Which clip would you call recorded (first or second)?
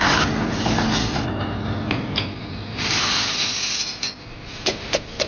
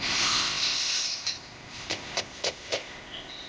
first